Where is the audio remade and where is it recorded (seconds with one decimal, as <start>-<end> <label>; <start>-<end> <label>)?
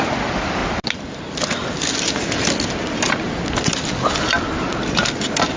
0.0-5.6 recorded